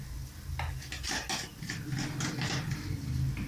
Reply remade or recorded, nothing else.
recorded